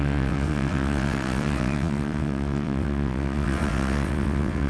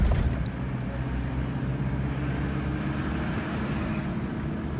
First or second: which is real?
second